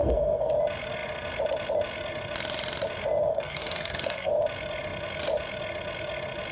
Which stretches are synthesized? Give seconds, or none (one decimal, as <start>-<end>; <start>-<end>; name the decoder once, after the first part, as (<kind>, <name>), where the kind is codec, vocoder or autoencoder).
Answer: 0.0-0.5 (codec, SNAC); 3.3-4.3